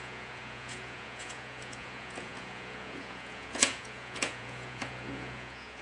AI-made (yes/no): yes